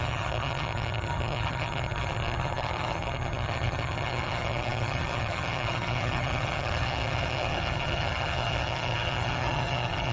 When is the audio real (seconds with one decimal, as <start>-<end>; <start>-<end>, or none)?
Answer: none

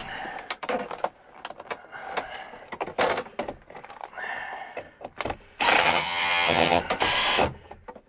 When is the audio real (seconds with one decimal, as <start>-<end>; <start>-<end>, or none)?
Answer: 0.0-5.8; 6.8-8.1

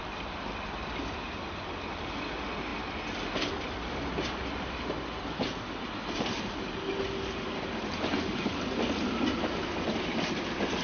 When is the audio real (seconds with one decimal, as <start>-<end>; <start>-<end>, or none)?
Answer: 0.0-10.8

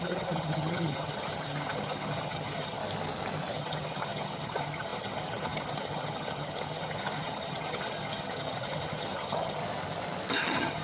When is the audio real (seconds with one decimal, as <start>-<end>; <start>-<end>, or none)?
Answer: 2.8-3.5; 9.6-10.4